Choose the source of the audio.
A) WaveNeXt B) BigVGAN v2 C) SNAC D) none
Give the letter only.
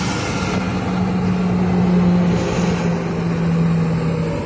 D